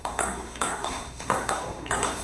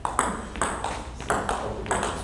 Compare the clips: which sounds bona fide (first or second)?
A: second